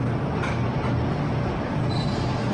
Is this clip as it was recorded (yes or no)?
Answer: yes